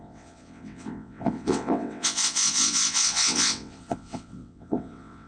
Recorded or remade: remade